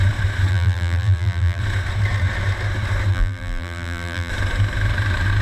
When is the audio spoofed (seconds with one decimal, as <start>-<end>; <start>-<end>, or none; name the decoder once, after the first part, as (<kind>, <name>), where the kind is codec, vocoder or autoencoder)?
0.5-1.6 (vocoder, BigVGAN v2); 3.1-4.3